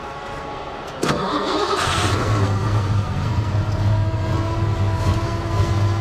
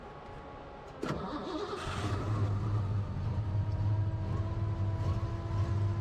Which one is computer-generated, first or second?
first